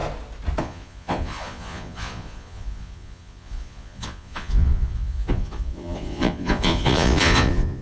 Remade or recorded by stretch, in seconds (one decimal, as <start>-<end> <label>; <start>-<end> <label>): 0.0-0.6 recorded; 0.6-7.8 remade